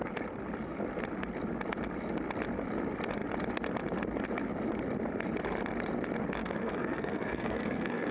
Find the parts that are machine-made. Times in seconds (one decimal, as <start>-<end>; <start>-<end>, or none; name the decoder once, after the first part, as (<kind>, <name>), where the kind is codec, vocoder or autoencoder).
6.4-8.1 (codec, SNAC)